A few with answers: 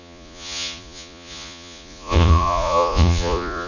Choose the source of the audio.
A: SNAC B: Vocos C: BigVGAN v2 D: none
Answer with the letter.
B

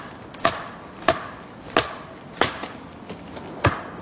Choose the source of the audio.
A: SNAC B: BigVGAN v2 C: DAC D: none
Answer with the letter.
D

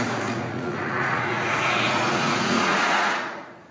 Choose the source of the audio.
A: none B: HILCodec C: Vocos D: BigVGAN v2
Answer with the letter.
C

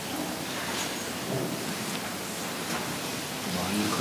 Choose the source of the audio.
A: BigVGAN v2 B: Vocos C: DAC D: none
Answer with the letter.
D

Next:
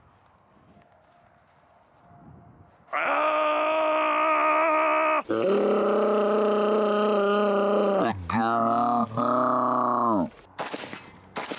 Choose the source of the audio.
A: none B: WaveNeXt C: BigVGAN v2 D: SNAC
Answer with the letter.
A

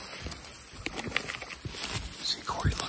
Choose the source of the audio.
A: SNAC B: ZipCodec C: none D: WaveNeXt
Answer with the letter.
C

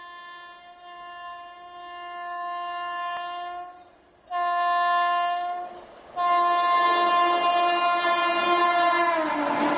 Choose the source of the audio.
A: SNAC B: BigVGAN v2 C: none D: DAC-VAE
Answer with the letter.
C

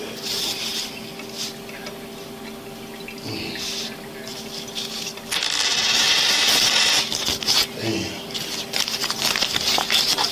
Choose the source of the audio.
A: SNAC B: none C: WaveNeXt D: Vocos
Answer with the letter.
B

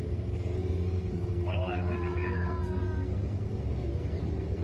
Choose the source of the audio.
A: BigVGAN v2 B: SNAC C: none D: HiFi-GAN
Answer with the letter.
B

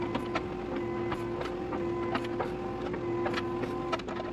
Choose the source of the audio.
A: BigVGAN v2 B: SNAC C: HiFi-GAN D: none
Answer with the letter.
D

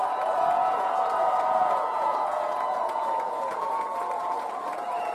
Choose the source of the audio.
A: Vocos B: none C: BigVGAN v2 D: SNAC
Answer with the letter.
A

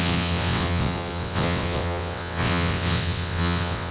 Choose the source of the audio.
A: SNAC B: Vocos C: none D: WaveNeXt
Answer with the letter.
D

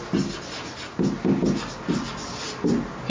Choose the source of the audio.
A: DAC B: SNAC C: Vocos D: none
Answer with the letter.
D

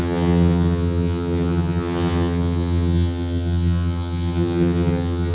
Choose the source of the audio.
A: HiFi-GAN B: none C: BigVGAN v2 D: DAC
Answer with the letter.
A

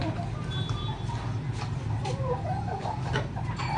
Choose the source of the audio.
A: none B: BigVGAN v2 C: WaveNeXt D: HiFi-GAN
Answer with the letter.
A